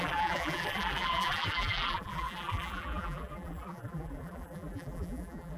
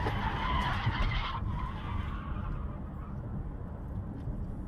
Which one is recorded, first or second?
second